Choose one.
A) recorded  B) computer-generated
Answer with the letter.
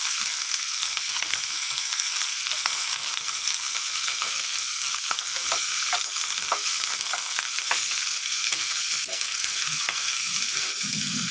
B